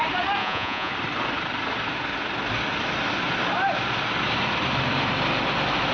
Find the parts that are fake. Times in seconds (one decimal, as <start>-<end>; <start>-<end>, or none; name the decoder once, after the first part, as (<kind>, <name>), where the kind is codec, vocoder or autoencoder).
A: 0.4-0.9 (vocoder, Vocos)